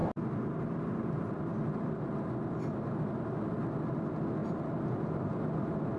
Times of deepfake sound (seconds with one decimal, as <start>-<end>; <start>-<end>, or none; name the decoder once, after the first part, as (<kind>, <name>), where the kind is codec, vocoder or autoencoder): none